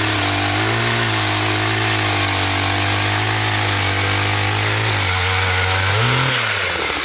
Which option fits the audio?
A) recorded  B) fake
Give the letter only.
A